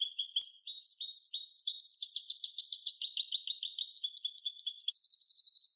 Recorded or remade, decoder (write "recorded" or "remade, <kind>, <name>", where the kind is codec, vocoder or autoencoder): recorded